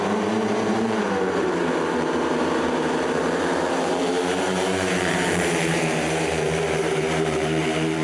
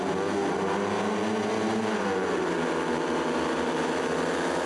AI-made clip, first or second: first